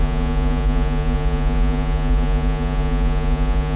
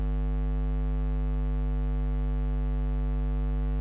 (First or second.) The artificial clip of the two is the first